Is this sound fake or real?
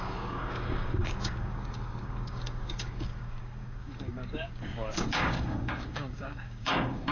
fake